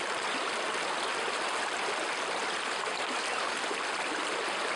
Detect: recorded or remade recorded